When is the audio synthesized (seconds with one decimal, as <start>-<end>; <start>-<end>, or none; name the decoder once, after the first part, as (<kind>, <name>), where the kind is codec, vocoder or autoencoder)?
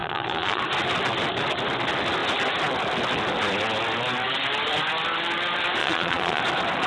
0.0-0.6 (vocoder, Vocos); 5.8-6.4